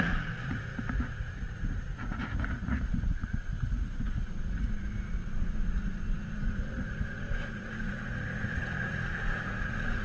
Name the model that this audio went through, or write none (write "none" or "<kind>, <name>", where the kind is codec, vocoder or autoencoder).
vocoder, Vocos